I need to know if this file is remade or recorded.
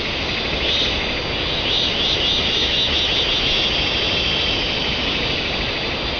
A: recorded